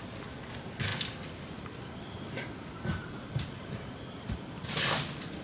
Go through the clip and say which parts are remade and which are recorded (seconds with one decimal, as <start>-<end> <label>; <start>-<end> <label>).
0.0-3.0 recorded; 3.0-3.9 remade; 3.9-5.4 recorded